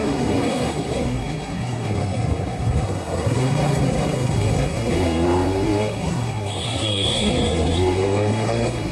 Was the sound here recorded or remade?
remade